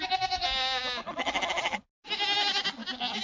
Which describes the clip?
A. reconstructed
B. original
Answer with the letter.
B